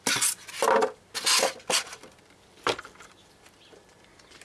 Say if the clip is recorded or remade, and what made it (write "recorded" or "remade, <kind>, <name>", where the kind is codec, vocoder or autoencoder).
recorded